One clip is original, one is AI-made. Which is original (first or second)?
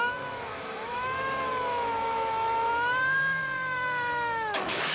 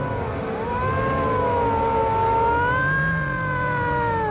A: second